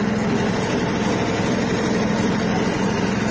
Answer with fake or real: real